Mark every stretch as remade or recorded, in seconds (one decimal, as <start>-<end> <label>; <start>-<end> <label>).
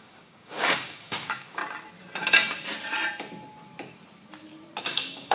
0.0-1.6 remade; 1.6-4.8 recorded; 4.8-5.3 remade